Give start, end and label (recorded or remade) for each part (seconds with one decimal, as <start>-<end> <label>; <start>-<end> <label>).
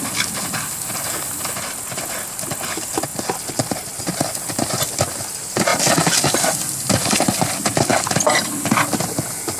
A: 0.0-9.6 recorded